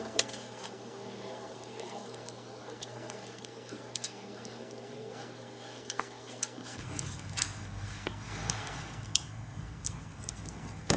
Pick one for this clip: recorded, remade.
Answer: remade